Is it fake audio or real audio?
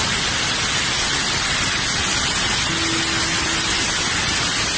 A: real